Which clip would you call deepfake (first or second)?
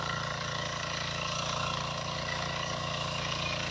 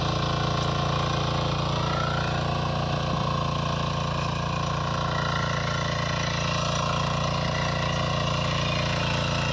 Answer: first